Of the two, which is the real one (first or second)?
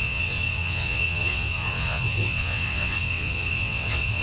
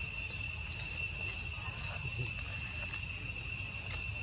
second